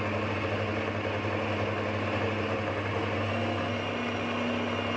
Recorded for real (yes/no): yes